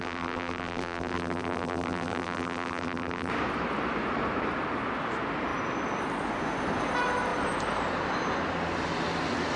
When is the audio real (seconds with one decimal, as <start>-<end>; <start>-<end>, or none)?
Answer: 3.3-9.6